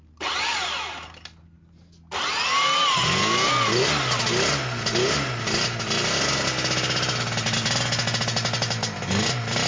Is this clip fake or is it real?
real